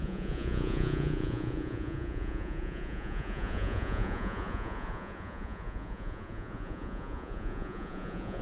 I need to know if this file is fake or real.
fake